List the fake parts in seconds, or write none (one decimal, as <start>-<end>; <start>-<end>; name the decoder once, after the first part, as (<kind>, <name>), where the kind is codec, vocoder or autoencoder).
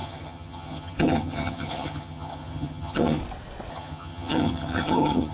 0.0-3.2 (vocoder, HiFi-GAN); 3.7-5.3